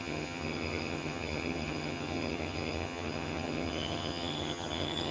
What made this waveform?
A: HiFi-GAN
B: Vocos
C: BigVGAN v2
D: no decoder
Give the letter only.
A